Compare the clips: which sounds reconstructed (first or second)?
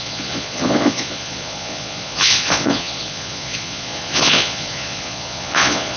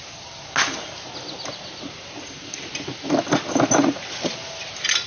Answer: first